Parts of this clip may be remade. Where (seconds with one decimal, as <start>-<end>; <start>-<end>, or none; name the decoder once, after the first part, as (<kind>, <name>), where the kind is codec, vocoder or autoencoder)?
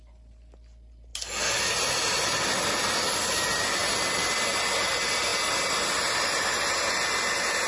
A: none